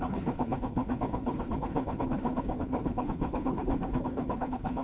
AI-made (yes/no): yes